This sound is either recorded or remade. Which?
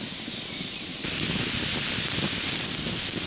recorded